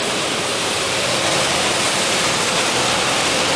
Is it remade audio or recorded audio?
recorded